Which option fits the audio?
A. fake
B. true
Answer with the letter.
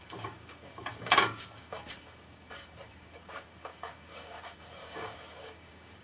A